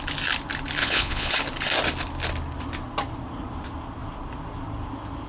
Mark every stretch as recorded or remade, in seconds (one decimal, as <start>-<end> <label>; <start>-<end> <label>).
0.0-0.8 recorded; 0.8-1.3 remade; 1.3-5.3 recorded